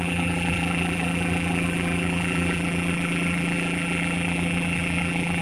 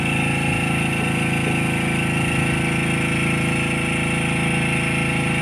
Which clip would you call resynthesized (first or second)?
first